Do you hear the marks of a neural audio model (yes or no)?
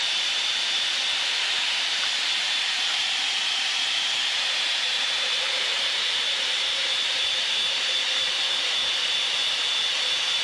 yes